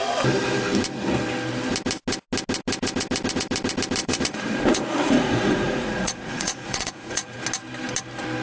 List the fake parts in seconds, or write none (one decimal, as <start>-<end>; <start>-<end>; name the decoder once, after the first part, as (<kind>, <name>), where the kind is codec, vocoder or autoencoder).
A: 4.0-7.4 (vocoder, Vocos)